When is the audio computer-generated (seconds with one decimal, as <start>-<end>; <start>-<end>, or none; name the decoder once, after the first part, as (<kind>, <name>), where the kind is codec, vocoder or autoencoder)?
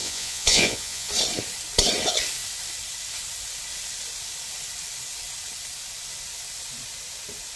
0.0-1.1 (vocoder, Vocos)